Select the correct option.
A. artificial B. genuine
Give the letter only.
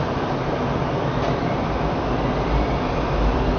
B